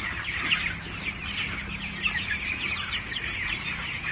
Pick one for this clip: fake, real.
real